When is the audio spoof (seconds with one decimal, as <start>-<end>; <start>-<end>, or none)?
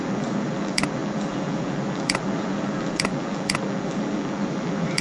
0.0-5.0